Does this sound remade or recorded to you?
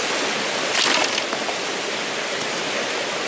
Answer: recorded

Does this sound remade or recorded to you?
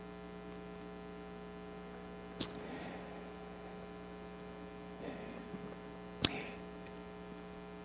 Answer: recorded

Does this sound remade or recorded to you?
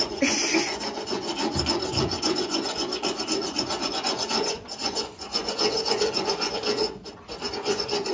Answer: remade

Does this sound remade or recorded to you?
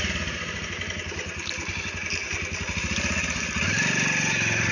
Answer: recorded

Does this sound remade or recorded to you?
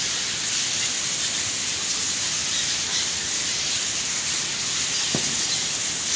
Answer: recorded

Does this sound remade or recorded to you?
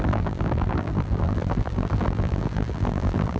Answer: remade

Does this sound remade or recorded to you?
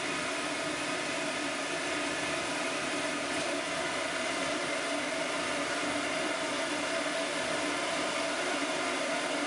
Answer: remade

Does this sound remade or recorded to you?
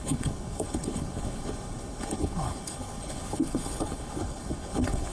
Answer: remade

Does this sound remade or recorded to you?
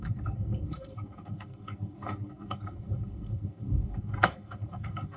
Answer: remade